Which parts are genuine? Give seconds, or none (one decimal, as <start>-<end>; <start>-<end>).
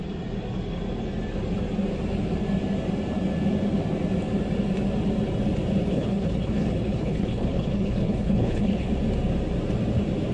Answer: 0.0-5.9; 8.9-10.3